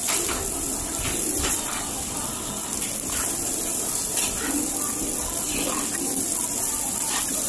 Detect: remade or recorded remade